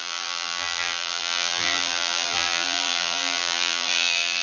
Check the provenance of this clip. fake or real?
fake